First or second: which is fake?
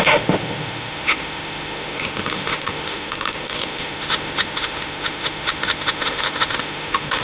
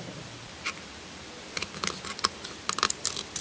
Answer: first